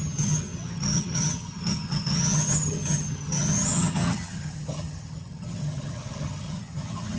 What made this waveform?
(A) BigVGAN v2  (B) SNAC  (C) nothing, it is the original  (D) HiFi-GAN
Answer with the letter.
D